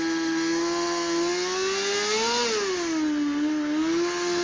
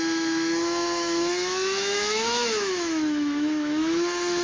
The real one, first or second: first